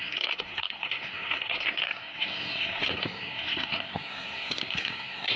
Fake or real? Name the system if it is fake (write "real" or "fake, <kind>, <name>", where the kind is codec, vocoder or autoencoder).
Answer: fake, codec, SNAC